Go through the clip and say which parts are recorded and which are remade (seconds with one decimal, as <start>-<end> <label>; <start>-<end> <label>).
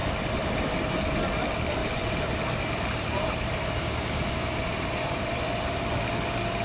0.0-1.2 remade; 1.2-1.8 recorded; 1.8-5.8 remade; 5.8-6.6 recorded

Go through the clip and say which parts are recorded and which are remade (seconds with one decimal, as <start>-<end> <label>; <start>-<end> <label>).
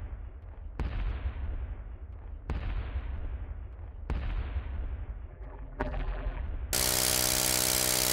0.0-5.3 recorded; 5.3-6.4 remade; 6.4-8.1 recorded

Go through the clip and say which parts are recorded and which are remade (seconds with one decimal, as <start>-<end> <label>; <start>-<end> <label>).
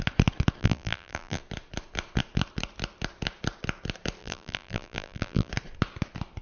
0.0-0.6 recorded; 0.6-1.4 remade; 1.4-4.2 recorded; 4.2-5.5 remade; 5.5-6.4 recorded